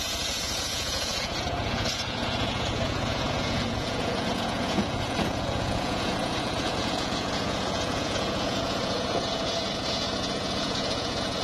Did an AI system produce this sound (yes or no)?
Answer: yes